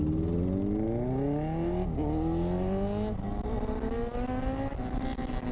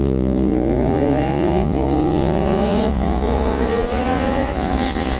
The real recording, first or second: first